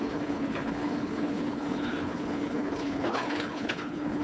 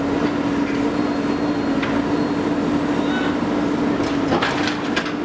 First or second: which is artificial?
first